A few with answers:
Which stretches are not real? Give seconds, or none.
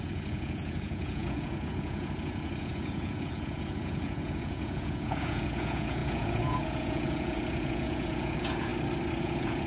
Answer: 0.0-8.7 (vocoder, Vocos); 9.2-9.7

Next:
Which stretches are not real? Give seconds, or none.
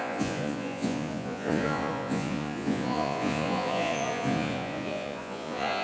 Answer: 0.0-5.8 (vocoder, Vocos)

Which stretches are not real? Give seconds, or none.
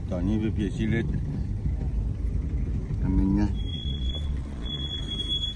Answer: 3.7-5.0 (vocoder, Vocos)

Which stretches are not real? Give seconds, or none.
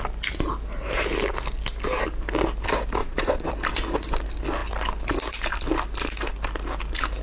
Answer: 3.0-3.5 (vocoder, Vocos)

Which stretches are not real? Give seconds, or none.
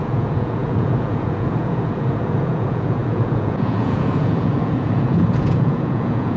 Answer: 0.0-6.4 (vocoder, Vocos)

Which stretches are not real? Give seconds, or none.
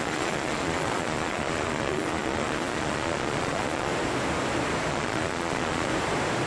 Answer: 0.0-3.9 (vocoder, Vocos); 4.9-5.9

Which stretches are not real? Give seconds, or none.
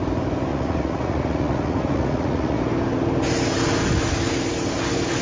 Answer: 0.5-2.6 (vocoder, Vocos)